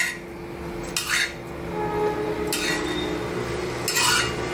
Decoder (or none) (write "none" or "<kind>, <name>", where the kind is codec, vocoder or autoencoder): none